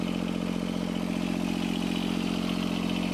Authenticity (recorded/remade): recorded